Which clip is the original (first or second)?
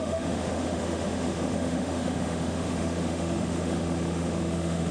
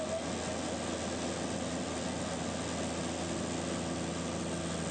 second